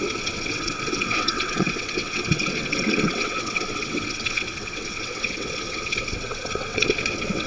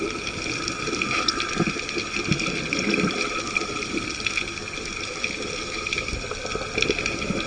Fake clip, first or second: first